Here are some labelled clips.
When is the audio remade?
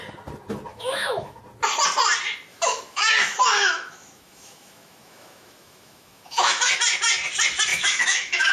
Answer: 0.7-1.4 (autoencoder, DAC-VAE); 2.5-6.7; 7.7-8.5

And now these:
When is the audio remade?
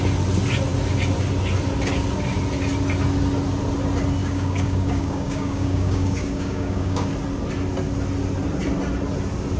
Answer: 4.2-7.1 (codec, DAC)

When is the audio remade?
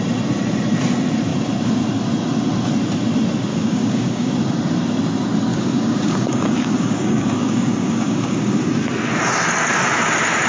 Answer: 3.5-4.3 (codec, DAC); 5.5-8.6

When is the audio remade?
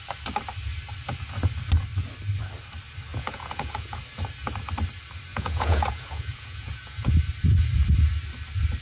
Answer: 3.1-4.0 (vocoder, Vocos); 5.3-7.1